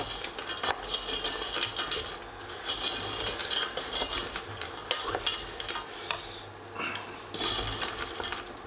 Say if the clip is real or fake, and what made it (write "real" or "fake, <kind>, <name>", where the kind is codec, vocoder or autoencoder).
real